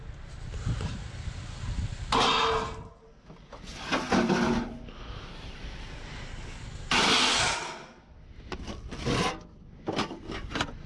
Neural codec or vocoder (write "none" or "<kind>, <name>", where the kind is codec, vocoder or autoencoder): none